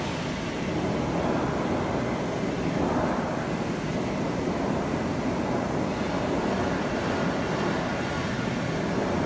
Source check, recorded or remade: recorded